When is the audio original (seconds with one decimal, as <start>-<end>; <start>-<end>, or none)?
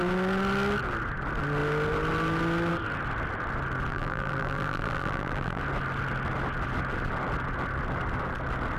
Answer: 0.0-3.9; 5.6-8.8